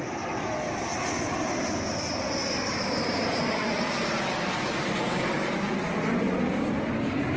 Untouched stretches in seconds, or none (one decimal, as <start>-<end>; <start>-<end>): 0.0-2.4; 5.3-7.4